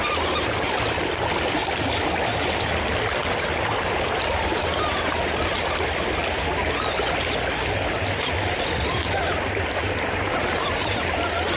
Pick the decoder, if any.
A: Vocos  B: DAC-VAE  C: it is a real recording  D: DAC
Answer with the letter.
C